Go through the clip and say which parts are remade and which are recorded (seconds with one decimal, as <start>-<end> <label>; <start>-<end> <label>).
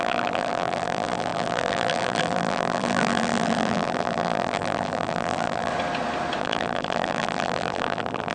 0.0-5.7 remade; 5.7-6.4 recorded; 6.4-8.3 remade